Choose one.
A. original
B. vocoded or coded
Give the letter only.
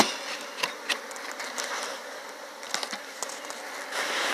A